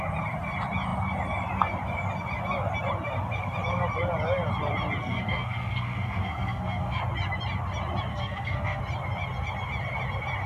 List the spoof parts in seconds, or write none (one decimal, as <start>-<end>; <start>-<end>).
5.0-7.0; 8.1-8.8